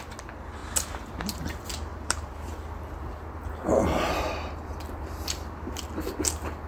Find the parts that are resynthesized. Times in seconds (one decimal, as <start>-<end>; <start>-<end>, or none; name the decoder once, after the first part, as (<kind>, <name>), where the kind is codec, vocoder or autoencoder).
1.9-2.5 (vocoder, BigVGAN v2)